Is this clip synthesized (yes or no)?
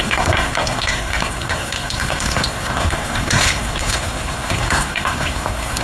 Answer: yes